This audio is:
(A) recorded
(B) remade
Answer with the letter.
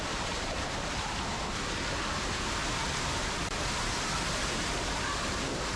A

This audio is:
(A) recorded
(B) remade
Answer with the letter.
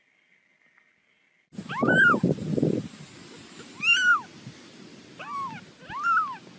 A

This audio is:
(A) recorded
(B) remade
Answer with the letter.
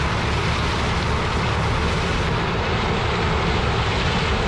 A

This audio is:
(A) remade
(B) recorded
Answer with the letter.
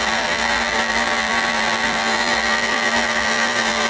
A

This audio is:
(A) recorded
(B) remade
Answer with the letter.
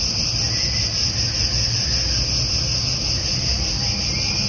A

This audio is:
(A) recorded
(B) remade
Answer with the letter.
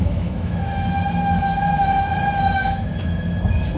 B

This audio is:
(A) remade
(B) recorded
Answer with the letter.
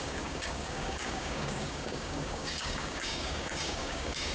A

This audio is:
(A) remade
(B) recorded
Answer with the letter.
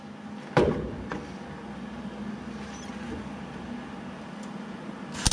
B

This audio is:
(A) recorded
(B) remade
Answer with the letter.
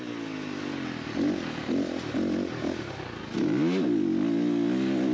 A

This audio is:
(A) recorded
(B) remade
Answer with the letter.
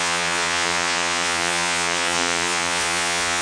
B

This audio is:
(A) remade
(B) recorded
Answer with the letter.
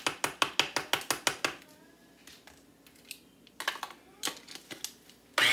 B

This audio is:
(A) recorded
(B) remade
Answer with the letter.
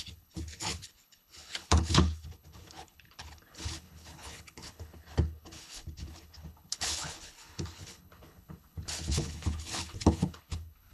B